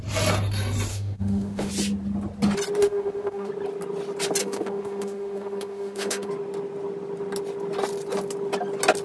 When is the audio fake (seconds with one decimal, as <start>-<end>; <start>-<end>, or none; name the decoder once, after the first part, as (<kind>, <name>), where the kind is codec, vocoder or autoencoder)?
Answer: 0.9-1.7 (autoencoder, DAC-VAE); 2.8-3.5; 4.4-6.3